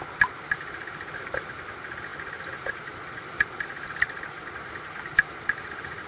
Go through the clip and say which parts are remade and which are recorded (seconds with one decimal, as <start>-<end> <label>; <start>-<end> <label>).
0.0-6.1 recorded

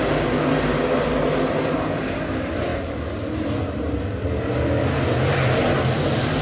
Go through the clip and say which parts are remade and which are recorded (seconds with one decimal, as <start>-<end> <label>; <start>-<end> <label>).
0.0-6.4 recorded

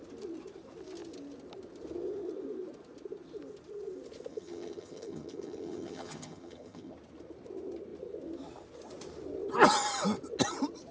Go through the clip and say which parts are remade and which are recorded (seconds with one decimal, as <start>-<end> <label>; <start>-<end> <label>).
0.0-4.3 recorded; 4.3-6.9 remade; 6.9-10.9 recorded

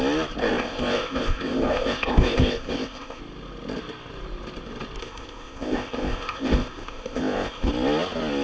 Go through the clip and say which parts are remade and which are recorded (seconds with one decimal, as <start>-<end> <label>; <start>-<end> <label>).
0.0-0.4 recorded; 0.4-3.2 remade; 3.2-5.0 recorded; 5.0-7.7 remade; 7.7-8.4 recorded

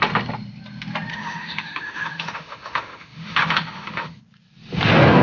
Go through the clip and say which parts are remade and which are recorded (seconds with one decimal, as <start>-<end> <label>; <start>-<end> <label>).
0.0-1.1 recorded; 1.1-4.2 remade; 4.2-5.2 recorded

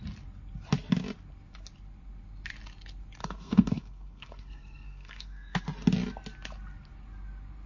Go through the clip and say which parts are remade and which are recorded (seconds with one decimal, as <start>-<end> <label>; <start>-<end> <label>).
0.0-3.2 recorded; 3.2-5.6 remade; 5.6-7.7 recorded

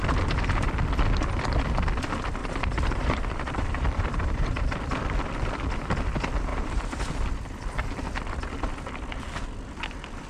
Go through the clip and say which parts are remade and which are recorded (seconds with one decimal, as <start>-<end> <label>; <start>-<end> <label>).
0.0-2.4 recorded; 2.4-4.8 remade; 4.8-6.5 recorded; 6.5-7.1 remade; 7.1-10.3 recorded